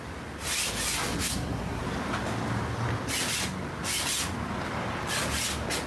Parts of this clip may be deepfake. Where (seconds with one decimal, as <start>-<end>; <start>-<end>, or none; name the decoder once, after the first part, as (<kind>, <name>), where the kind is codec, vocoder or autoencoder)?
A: 1.2-1.8 (codec, SNAC)